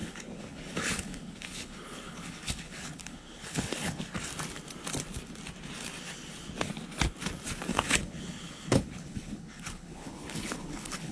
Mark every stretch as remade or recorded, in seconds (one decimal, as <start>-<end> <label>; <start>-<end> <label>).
0.0-4.0 remade; 4.0-7.7 recorded; 7.7-11.1 remade